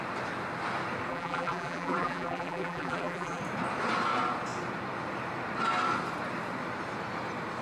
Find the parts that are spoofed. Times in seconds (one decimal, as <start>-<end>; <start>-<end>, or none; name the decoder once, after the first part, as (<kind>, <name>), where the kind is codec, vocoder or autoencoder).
1.1-3.4 (vocoder, BigVGAN v2)